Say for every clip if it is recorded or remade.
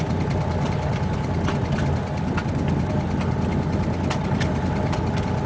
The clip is recorded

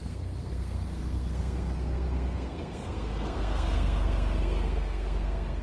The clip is remade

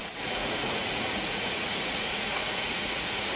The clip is remade